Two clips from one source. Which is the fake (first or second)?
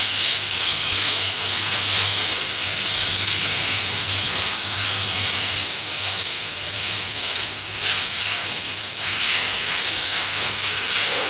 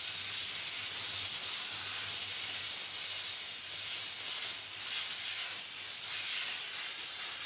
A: first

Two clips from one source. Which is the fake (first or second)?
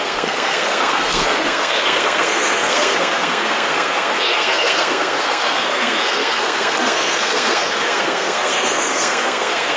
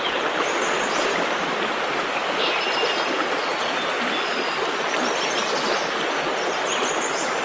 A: first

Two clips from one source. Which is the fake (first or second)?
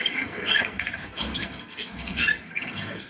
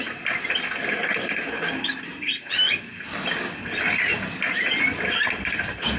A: first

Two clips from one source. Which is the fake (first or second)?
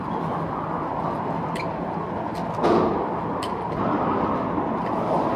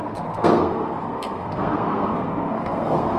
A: second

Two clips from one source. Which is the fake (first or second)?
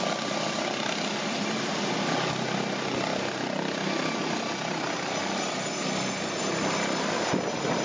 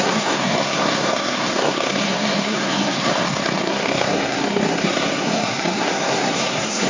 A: second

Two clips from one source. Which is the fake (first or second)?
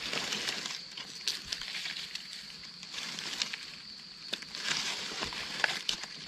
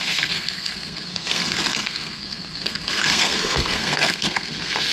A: second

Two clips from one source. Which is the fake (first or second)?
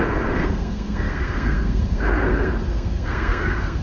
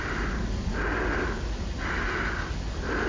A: first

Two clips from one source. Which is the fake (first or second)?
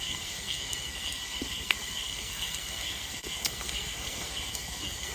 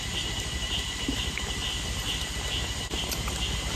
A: first